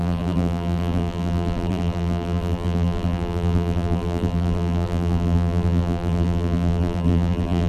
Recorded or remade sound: remade